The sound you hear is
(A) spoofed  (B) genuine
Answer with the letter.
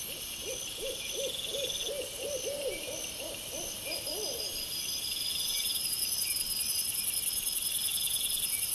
B